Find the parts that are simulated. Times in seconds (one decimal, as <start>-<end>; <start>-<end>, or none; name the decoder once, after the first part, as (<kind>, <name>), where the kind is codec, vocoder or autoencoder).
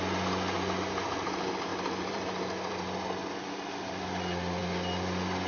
1.7-3.0 (vocoder, BigVGAN v2)